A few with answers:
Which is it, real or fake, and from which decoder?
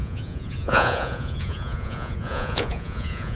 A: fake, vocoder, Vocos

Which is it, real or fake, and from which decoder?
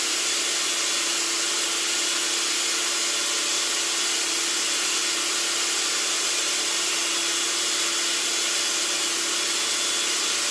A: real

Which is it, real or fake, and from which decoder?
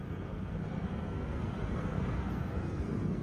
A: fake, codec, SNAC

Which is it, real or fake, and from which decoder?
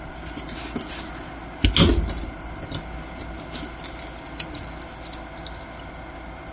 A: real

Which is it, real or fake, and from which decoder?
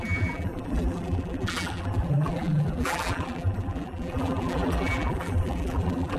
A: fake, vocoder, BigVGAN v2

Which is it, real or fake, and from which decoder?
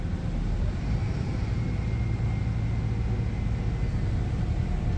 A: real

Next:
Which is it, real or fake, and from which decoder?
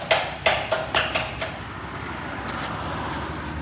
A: real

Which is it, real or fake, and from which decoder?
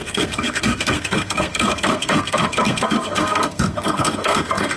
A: fake, codec, SNAC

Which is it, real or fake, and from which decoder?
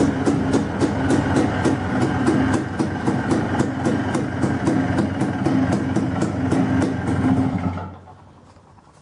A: real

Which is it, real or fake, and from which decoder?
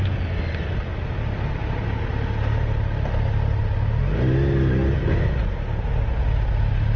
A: real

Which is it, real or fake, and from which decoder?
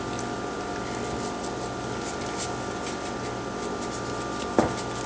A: real